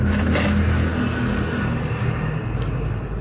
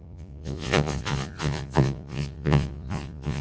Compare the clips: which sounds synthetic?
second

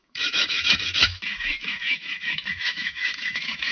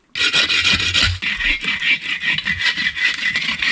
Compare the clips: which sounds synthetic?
first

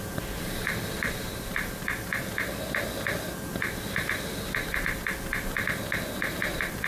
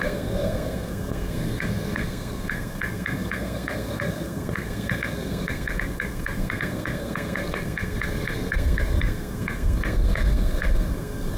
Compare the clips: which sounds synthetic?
second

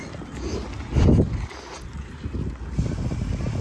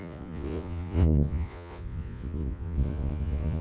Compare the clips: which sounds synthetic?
second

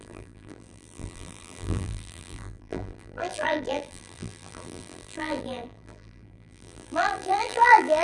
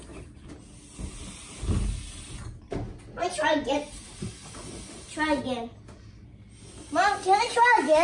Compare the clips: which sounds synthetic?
first